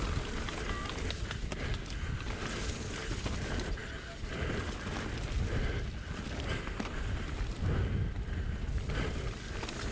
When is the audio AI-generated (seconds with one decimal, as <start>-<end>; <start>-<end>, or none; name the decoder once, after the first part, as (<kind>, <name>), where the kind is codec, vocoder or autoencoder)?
none